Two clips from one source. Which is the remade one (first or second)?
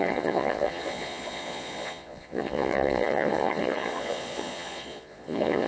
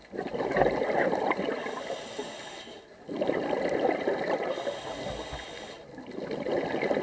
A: first